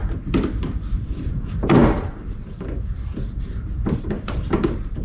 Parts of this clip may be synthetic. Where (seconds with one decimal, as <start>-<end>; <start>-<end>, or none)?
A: 0.8-5.0